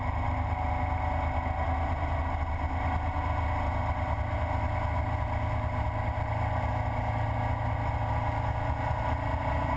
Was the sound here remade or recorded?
recorded